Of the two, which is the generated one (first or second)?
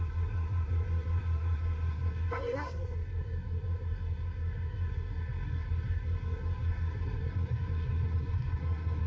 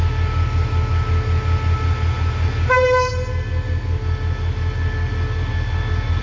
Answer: first